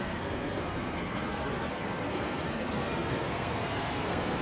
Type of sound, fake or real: fake